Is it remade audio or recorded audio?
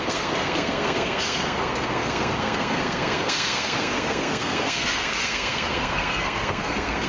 remade